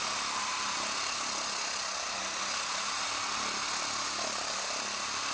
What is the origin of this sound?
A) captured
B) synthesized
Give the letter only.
A